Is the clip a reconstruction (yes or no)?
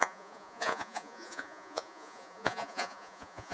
yes